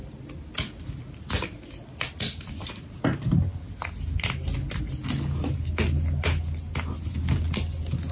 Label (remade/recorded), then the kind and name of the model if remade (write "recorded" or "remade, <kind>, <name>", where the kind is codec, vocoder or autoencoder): recorded